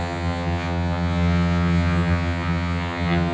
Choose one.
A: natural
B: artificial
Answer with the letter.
B